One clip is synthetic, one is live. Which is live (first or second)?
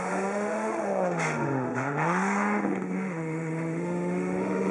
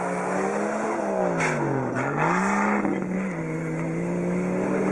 second